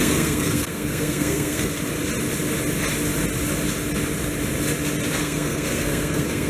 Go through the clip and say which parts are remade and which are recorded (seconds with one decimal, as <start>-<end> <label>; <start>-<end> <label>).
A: 0.0-1.7 remade; 1.7-5.2 recorded; 5.2-6.5 remade